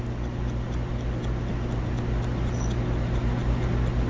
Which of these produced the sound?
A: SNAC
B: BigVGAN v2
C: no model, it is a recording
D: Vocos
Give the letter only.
C